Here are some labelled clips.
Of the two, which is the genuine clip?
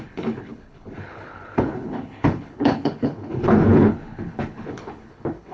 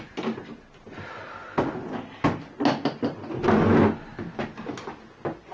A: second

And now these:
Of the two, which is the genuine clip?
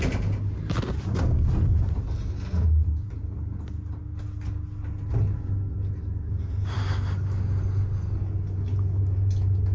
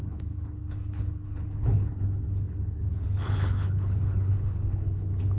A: first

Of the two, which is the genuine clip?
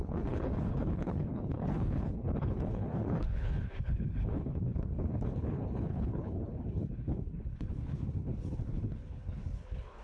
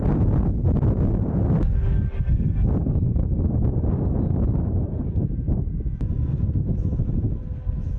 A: second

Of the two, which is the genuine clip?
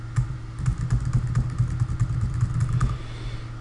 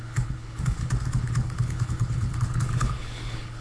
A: first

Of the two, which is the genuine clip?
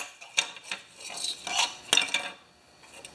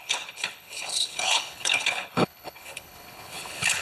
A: first